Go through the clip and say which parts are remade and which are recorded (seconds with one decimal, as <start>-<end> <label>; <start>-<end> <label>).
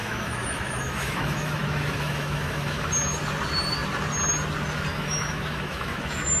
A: 0.0-2.9 remade; 2.9-4.9 recorded; 4.9-6.4 remade